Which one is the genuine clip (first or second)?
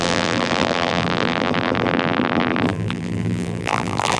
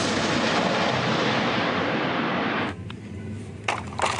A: second